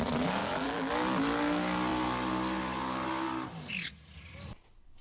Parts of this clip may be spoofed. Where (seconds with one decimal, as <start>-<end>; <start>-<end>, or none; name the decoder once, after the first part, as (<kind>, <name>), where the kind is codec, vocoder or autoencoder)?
0.4-0.9 (vocoder, BigVGAN v2)